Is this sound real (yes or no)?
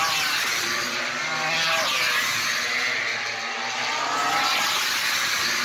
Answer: yes